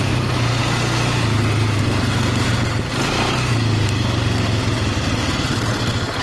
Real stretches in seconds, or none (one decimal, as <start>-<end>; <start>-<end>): 0.0-6.2